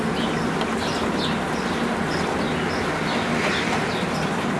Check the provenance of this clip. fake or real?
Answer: real